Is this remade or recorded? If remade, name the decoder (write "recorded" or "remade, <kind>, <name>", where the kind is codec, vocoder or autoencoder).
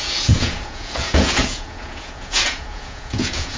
remade, vocoder, Vocos